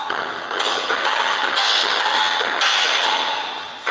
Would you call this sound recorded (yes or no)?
no